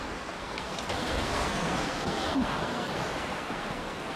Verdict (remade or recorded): remade